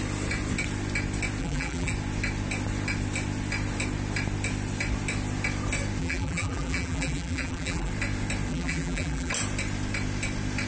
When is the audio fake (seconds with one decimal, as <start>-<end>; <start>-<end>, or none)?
1.4-1.9; 6.0-7.9; 8.5-9.3